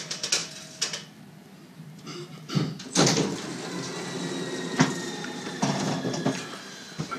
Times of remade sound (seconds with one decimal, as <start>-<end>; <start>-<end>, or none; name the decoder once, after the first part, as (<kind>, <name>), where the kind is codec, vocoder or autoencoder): none